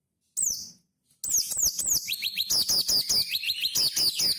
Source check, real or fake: real